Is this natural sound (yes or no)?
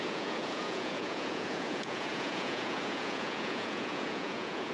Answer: no